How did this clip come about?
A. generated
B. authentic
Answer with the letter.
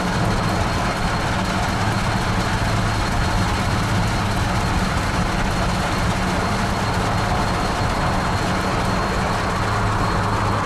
B